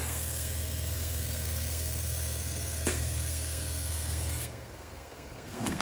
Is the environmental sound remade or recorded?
remade